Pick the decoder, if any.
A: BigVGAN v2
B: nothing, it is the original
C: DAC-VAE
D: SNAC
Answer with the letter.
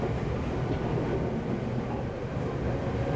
B